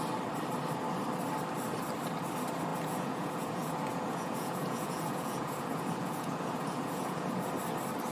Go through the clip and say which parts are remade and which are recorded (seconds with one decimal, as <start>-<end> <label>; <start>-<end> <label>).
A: 0.0-2.7 recorded; 2.7-7.5 remade; 7.5-8.1 recorded

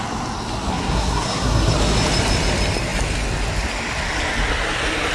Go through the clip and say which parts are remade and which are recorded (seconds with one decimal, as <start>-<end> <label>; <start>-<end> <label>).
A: 0.0-0.7 recorded; 0.7-1.7 remade; 1.7-5.1 recorded

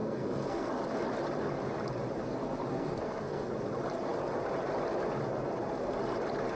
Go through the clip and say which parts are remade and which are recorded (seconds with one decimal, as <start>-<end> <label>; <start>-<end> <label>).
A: 0.0-0.7 remade; 0.7-2.7 recorded; 2.7-3.5 remade; 3.5-6.5 recorded

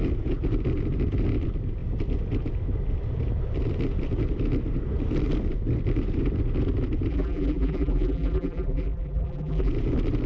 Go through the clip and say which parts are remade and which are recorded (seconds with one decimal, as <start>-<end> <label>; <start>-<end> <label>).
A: 0.0-7.1 recorded; 7.1-9.7 remade; 9.7-10.3 recorded

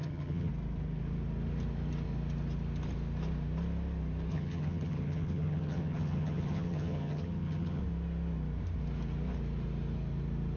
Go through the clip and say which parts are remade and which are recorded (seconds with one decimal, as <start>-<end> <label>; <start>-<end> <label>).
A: 0.0-0.5 remade; 0.5-4.3 recorded; 4.3-7.8 remade; 7.8-10.6 recorded